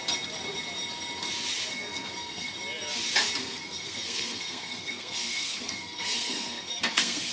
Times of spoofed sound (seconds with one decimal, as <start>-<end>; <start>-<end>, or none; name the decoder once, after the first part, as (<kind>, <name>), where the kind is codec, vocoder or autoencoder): 1.7-2.5 (codec, SNAC); 3.4-7.3